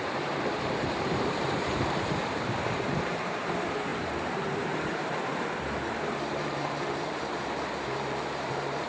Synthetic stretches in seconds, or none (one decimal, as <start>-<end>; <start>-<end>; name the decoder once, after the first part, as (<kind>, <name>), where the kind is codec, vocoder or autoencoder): 0.0-8.9 (vocoder, BigVGAN v2)